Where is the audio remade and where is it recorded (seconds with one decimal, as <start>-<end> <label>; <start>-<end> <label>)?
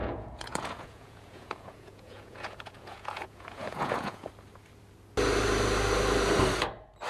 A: 0.0-4.3 remade; 4.3-7.1 recorded